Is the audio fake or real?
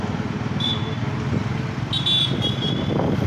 real